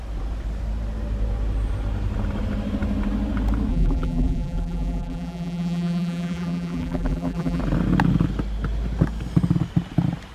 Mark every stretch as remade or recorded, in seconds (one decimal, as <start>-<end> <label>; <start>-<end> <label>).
0.0-3.7 recorded; 3.7-7.6 remade; 7.6-10.3 recorded